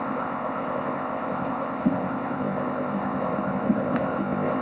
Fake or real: fake